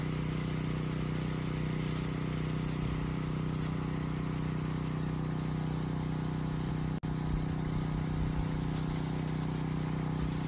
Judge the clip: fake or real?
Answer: real